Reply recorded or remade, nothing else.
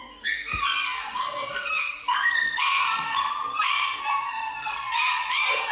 remade